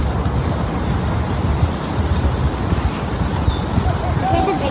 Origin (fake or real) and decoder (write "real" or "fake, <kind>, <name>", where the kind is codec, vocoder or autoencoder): real